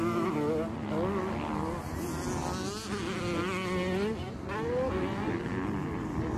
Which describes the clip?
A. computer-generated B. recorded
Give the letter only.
B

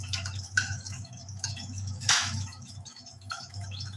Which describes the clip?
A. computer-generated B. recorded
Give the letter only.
A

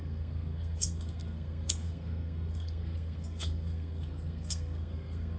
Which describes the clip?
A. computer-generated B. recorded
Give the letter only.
A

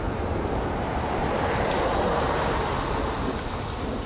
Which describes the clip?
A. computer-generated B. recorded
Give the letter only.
B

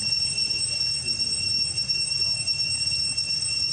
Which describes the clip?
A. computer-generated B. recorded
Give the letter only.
A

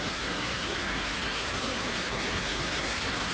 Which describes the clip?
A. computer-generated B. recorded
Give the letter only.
A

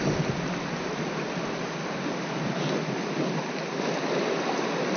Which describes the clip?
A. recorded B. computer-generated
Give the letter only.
A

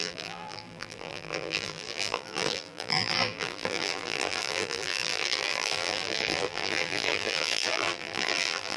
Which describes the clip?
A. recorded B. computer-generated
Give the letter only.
B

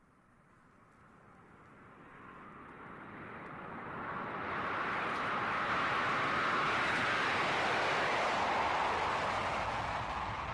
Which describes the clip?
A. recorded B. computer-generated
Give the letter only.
A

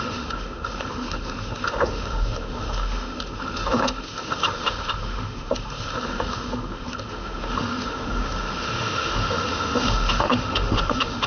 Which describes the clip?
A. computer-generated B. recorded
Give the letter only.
A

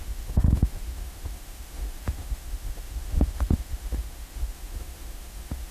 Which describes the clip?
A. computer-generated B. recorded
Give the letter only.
A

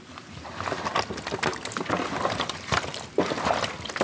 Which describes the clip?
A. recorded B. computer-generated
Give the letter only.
A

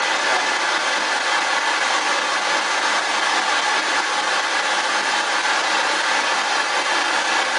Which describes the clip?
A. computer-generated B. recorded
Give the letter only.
B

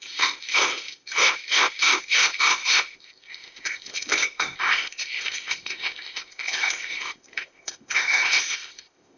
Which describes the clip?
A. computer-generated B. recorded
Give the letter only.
A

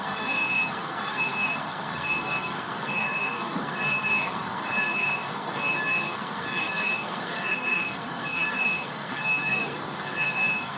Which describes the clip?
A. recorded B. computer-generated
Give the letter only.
B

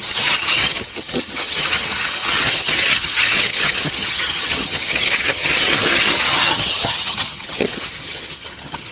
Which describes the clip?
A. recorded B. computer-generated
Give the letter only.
B